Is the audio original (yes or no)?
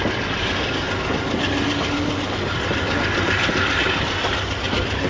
yes